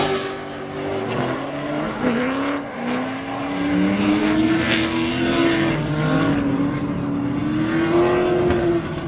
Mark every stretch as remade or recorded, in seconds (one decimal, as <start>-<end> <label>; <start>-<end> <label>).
0.0-4.2 recorded; 4.2-5.1 remade; 5.1-9.1 recorded